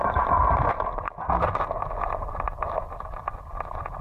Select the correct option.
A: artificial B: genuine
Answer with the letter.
B